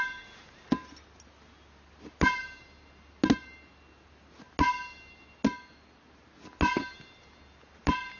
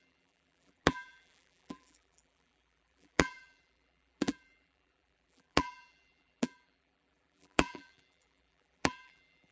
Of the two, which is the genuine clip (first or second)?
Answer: first